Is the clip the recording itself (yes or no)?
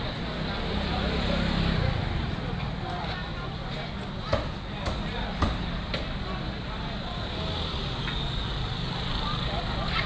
yes